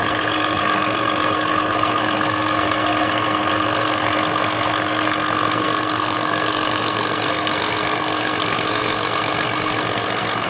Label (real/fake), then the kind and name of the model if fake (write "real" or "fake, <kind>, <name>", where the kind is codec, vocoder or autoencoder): fake, codec, SNAC